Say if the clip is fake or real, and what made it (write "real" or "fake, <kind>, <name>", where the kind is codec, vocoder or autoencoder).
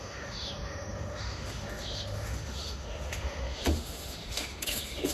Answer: fake, autoencoder, DAC-VAE